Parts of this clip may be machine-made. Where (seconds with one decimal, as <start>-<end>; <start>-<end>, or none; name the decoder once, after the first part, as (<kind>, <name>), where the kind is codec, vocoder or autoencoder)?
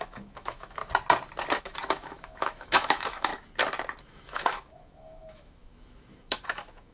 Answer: 0.0-0.8 (autoencoder, DAC-VAE); 1.6-3.3; 4.0-6.9